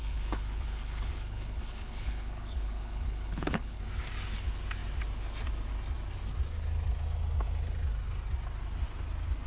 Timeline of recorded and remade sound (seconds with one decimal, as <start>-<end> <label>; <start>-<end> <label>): 0.0-3.8 remade; 3.8-9.5 recorded